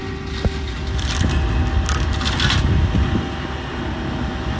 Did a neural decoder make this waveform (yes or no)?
no